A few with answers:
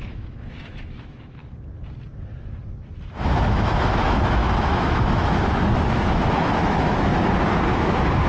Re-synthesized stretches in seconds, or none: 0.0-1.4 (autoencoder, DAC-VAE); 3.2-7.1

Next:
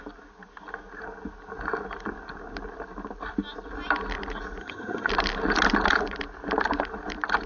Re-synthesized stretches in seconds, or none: 4.6-5.1 (vocoder, HiFi-GAN)